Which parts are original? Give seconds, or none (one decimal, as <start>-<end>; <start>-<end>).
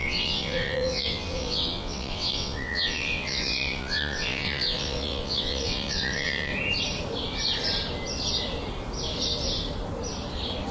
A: 6.5-10.7